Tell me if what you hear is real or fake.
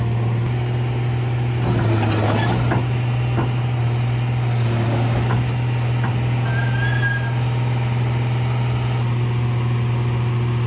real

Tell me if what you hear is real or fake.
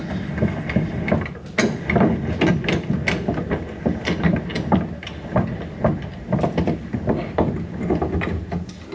real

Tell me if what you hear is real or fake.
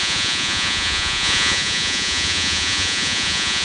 fake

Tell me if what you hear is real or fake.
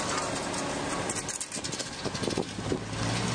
real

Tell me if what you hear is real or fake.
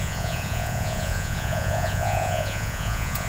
fake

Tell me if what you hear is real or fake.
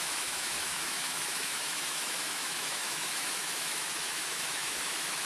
fake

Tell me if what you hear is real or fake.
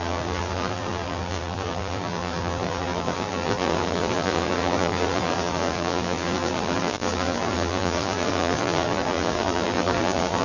fake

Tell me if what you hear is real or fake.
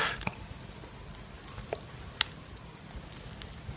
real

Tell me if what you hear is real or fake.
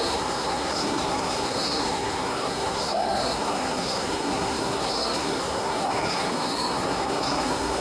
fake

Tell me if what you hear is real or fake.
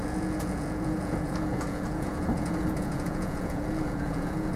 fake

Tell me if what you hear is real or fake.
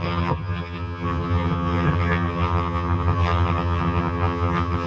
fake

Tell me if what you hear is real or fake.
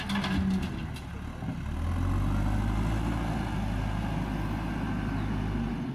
real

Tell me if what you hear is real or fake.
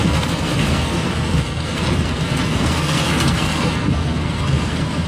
fake